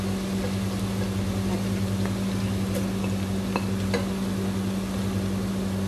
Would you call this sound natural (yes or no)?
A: yes